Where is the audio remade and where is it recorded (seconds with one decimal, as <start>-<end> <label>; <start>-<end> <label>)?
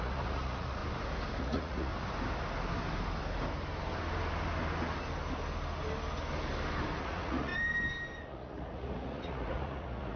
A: 0.0-0.8 remade; 0.8-1.4 recorded; 1.4-1.9 remade; 1.9-7.0 recorded; 7.0-7.5 remade; 7.5-8.2 recorded; 8.2-10.2 remade